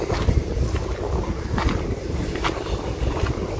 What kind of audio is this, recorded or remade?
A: recorded